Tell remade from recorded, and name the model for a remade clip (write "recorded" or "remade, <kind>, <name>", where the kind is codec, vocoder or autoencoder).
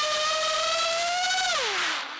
recorded